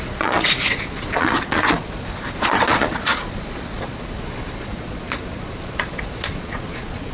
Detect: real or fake fake